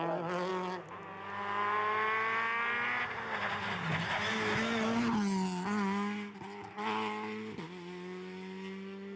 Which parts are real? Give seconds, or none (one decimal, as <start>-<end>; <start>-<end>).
0.0-9.2